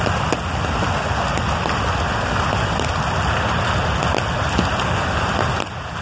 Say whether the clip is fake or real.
real